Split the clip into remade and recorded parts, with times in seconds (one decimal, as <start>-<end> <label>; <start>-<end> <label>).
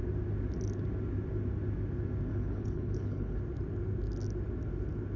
0.0-2.3 recorded; 2.3-3.4 remade; 3.4-5.2 recorded